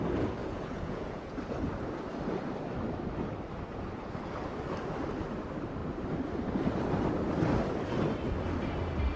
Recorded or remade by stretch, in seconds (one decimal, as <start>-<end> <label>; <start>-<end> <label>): 0.0-0.4 recorded; 0.4-1.3 remade; 1.3-9.2 recorded